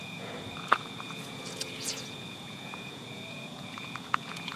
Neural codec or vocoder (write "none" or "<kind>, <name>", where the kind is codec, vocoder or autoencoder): vocoder, Vocos